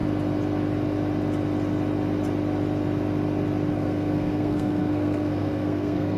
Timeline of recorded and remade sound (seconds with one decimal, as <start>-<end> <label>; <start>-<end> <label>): 0.0-3.7 recorded; 3.7-6.2 remade